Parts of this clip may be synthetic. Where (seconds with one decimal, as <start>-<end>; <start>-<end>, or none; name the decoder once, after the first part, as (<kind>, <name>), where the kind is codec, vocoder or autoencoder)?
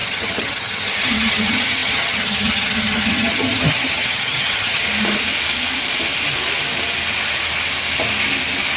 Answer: 0.0-4.8 (vocoder, HiFi-GAN)